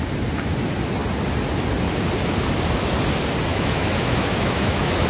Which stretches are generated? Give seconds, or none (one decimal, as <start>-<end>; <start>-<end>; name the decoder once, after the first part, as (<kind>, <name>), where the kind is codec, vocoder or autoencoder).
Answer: 3.5-5.1 (autoencoder, DAC-VAE)